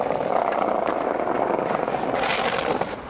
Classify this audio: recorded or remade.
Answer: recorded